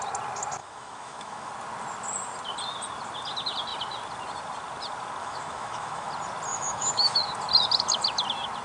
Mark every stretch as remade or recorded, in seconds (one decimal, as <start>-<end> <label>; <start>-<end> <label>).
0.0-0.6 recorded; 0.6-1.5 remade; 1.5-5.2 recorded; 5.2-6.1 remade; 6.1-6.5 recorded; 6.5-7.2 remade; 7.2-8.6 recorded

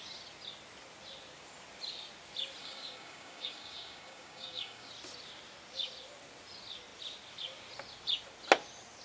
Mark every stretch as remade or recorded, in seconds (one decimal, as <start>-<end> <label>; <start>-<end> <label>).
0.0-2.6 recorded; 2.6-4.9 remade; 4.9-9.0 recorded